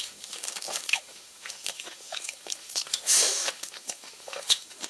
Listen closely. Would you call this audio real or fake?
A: fake